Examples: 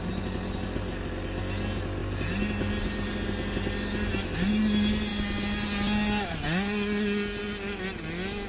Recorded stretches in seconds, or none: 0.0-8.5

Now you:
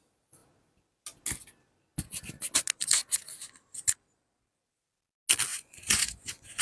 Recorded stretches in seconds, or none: 0.0-5.5

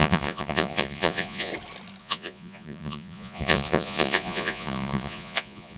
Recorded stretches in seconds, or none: 1.5-2.0

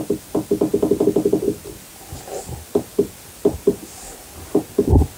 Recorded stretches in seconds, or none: 0.0-5.2

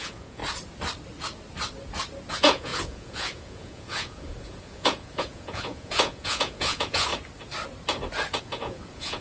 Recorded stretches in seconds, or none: 0.4-2.3; 7.1-8.4

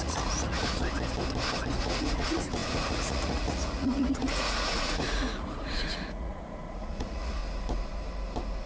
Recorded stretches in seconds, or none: 0.8-1.8; 7.4-8.7

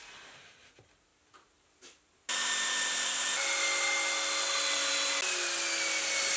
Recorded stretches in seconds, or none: 0.0-6.4

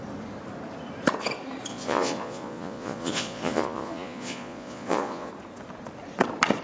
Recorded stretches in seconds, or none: 0.0-1.7; 5.3-6.6